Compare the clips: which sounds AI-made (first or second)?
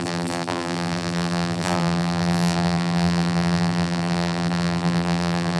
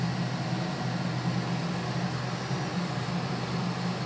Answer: first